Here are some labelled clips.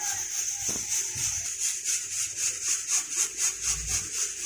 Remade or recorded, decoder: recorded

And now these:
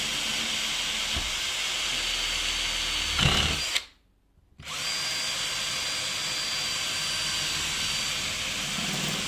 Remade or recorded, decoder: recorded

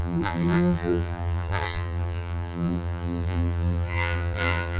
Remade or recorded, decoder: remade, vocoder, BigVGAN v2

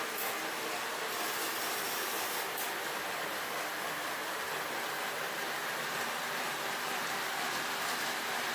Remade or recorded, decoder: remade, vocoder, BigVGAN v2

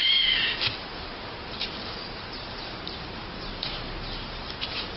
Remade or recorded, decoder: recorded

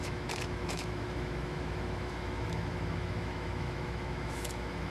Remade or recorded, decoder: remade, autoencoder, DAC-VAE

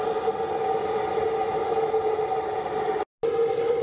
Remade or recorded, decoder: recorded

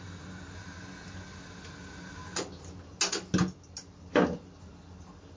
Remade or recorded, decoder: recorded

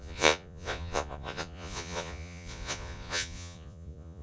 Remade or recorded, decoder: remade, vocoder, Vocos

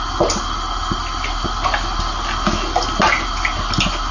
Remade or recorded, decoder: recorded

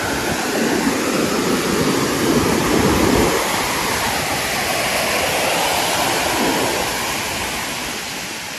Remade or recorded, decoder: recorded